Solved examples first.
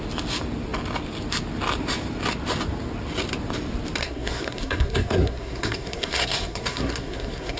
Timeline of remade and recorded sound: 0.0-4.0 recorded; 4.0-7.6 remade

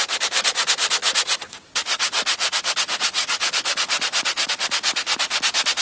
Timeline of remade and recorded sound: 0.0-1.0 recorded; 1.0-4.5 remade; 4.5-5.8 recorded

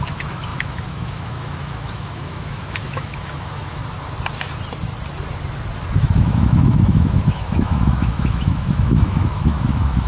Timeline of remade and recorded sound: 0.0-3.8 remade; 3.8-6.0 recorded; 6.0-10.1 remade

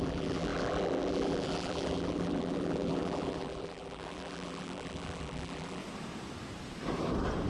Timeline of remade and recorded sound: 0.0-5.8 remade; 5.8-7.5 recorded

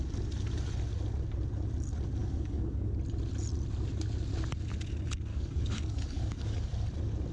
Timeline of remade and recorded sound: 0.0-2.2 recorded; 2.2-2.9 remade; 2.9-5.3 recorded; 5.3-6.7 remade; 6.7-7.3 recorded

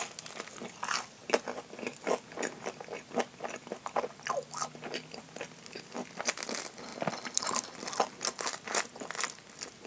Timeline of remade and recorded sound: 0.0-9.9 recorded

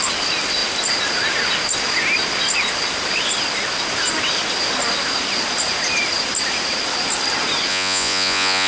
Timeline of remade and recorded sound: 0.0-7.7 recorded; 7.7-8.7 remade